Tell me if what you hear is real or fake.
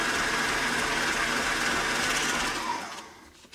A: real